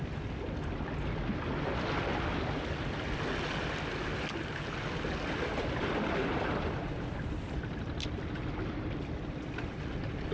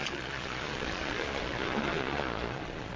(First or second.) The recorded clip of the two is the first